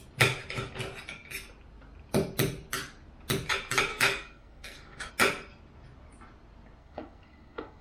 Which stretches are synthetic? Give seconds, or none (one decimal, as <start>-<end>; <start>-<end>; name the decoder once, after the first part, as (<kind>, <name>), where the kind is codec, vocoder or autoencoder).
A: 3.9-5.1 (codec, SNAC); 6.8-7.8

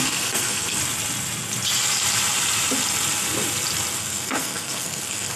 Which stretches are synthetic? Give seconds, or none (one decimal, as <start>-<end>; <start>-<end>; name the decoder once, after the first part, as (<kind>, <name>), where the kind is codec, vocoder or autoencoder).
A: 0.0-0.8 (codec, SNAC); 4.0-5.4

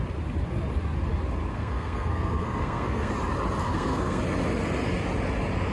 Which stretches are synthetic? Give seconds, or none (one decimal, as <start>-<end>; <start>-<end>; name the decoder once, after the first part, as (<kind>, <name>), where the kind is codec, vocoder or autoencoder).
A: 1.5-3.1 (codec, SNAC); 3.6-4.2

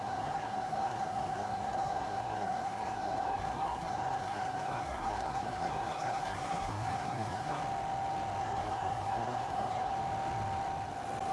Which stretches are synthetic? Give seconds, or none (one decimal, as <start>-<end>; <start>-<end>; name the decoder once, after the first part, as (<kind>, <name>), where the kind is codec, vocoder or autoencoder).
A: 0.0-7.6 (codec, SNAC); 8.4-9.9

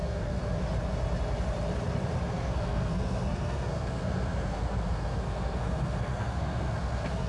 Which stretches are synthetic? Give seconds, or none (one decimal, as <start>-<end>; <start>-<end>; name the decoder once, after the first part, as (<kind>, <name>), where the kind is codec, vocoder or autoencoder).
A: 0.0-0.4 (codec, SNAC); 2.3-7.3